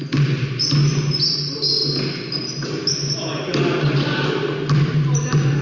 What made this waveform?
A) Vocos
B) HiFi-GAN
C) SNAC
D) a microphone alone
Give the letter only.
D